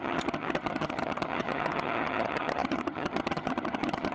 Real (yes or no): no